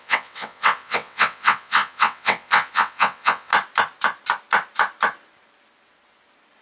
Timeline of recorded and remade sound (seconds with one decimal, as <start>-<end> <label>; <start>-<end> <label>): 0.0-3.5 remade; 3.5-6.6 recorded